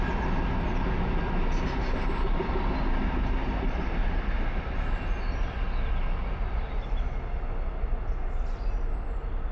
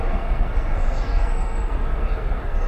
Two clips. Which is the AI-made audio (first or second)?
second